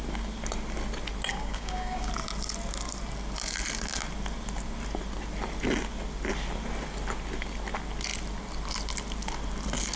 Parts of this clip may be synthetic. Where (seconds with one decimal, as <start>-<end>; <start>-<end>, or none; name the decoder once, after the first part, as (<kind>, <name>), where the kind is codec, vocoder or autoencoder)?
1.3-2.1 (codec, DAC)